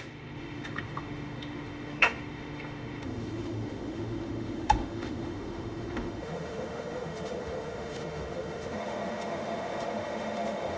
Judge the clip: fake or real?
fake